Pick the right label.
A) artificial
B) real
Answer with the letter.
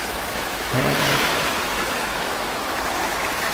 A